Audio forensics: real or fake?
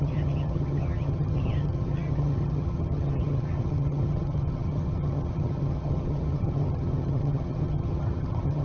fake